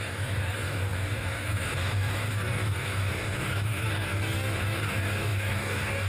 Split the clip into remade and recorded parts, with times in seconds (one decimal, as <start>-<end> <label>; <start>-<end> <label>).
0.0-6.1 remade